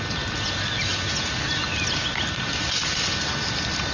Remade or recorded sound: recorded